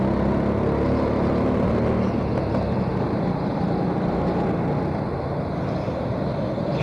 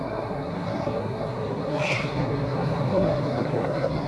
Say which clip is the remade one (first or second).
second